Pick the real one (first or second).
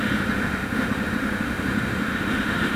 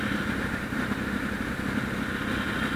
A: second